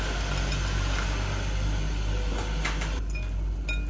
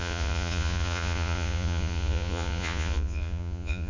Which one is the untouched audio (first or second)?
first